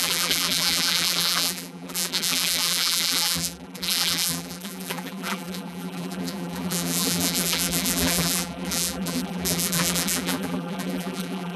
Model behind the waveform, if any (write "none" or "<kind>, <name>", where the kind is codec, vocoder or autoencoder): vocoder, BigVGAN v2